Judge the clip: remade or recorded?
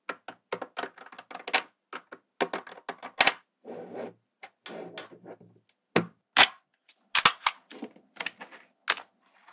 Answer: recorded